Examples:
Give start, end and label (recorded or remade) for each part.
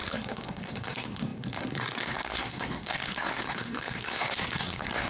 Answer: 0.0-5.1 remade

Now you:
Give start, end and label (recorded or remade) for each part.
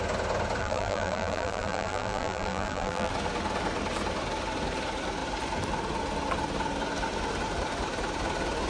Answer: 0.0-0.6 recorded; 0.6-3.1 remade; 3.1-8.7 recorded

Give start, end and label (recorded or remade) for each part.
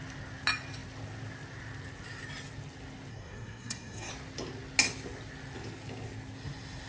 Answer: 0.0-3.1 recorded; 3.1-4.1 remade; 4.1-6.9 recorded